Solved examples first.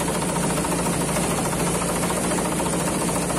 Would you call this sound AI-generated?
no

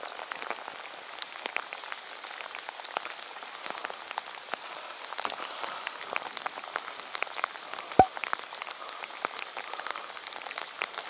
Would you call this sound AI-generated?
yes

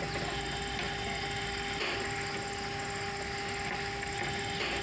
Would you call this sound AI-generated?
no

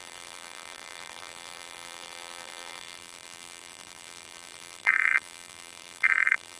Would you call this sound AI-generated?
yes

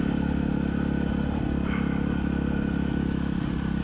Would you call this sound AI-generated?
no